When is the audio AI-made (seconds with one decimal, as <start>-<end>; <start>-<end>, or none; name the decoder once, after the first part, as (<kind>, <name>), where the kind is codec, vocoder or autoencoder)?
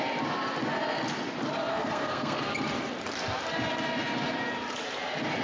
1.7-2.4 (codec, SNAC)